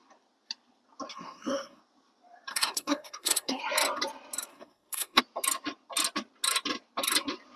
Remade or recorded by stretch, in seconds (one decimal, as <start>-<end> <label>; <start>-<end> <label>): 0.0-1.1 recorded; 1.1-1.8 remade; 1.8-2.5 recorded; 2.5-3.6 remade; 3.6-4.5 recorded; 4.5-5.2 remade; 5.2-7.6 recorded